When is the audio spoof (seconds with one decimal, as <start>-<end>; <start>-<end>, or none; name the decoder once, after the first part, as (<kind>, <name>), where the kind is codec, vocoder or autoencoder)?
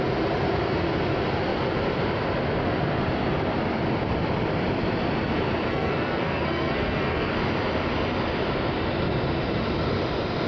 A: 5.7-7.3 (codec, SNAC)